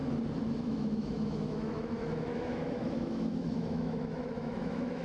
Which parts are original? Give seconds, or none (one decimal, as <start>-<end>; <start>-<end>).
0.0-0.6